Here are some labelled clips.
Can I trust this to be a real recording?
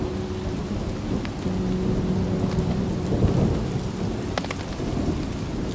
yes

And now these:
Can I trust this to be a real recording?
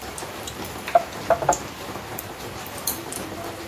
no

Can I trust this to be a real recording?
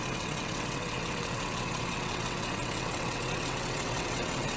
no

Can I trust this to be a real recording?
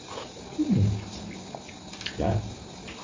yes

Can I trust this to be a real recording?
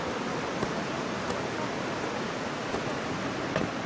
yes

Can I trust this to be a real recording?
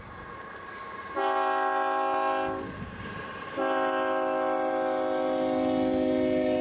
yes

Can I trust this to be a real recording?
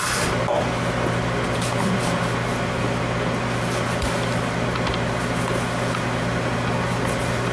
yes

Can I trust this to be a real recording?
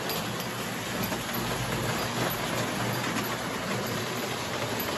yes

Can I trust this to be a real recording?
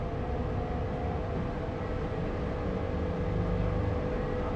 yes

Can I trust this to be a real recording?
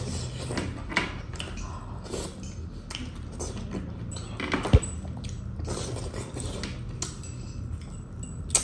yes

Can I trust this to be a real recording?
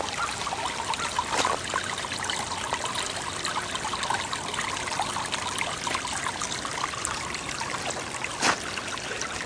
yes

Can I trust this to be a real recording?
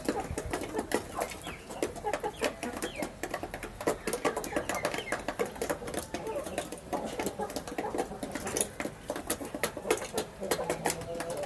yes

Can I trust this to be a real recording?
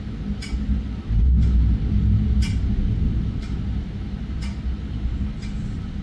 yes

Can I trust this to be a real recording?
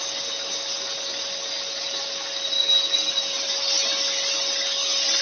yes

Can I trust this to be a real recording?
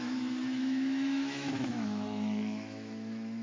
no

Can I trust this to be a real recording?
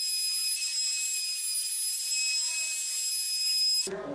yes